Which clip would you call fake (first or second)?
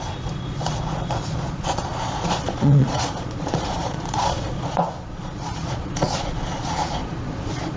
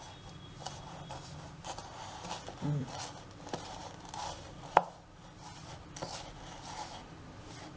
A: first